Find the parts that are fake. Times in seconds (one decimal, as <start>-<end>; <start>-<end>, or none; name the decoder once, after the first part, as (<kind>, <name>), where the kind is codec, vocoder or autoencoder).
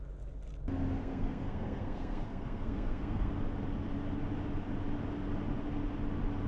1.0-3.3 (codec, SNAC)